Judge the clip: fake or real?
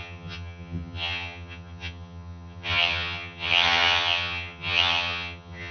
fake